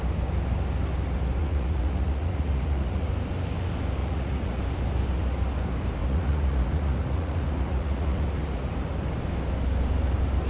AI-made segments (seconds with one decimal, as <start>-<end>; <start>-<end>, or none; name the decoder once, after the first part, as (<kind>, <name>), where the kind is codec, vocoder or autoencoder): 1.4-3.1 (vocoder, Vocos); 4.0-4.6; 6.0-8.7